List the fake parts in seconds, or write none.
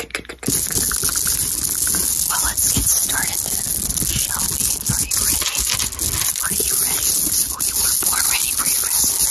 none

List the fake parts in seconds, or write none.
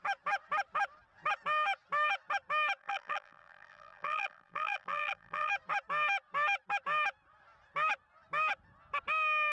2.8-5.5 (vocoder, BigVGAN v2)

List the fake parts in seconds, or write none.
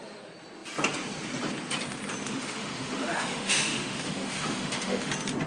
2.3-5.1 (autoencoder, DAC-VAE)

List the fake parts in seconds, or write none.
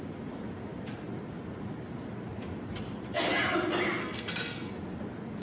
4.0-4.7 (codec, SNAC)